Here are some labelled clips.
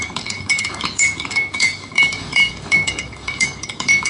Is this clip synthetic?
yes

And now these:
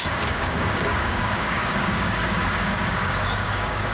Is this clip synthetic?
yes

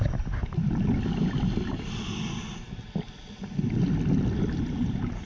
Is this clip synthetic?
no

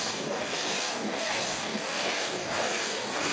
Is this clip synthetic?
yes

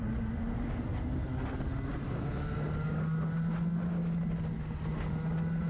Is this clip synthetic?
no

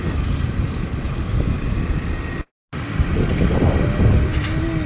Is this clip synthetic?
no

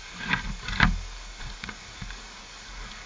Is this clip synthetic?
yes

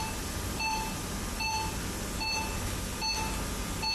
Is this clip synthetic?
no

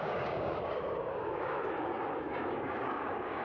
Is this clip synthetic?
yes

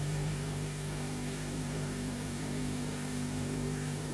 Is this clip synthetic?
yes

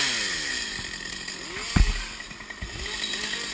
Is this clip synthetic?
no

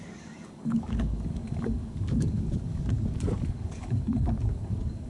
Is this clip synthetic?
yes